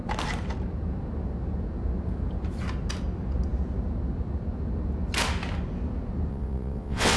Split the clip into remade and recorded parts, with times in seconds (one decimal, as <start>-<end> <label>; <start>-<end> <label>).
0.0-6.3 recorded; 6.3-7.2 remade